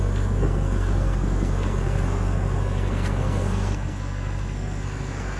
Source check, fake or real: fake